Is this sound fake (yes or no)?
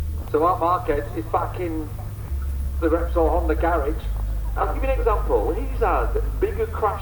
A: no